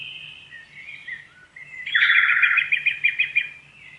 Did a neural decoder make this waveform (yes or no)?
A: no